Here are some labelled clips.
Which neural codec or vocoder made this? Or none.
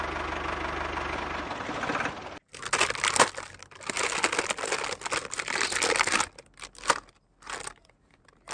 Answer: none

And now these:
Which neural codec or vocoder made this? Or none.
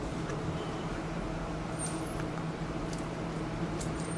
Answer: vocoder, BigVGAN v2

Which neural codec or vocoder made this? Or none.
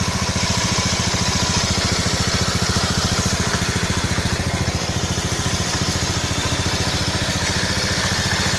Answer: none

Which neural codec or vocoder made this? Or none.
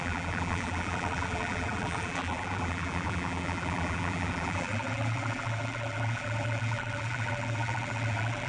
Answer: vocoder, BigVGAN v2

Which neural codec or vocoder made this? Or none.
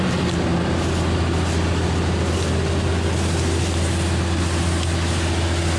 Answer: none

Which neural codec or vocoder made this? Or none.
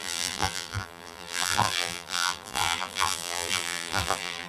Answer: vocoder, BigVGAN v2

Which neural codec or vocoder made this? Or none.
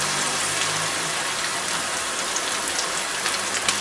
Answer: none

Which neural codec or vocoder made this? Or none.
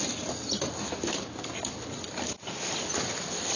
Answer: none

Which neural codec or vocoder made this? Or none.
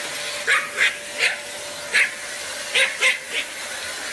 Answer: none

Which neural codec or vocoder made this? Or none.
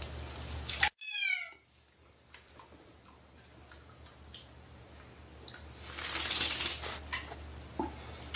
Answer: none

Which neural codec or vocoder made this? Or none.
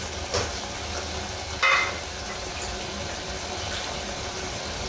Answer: none